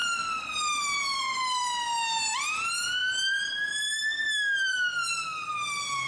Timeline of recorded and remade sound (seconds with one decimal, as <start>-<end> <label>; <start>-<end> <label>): 0.0-1.2 remade; 1.2-3.0 recorded; 3.0-6.1 remade